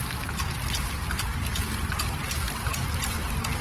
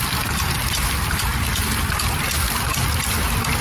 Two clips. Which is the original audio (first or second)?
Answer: first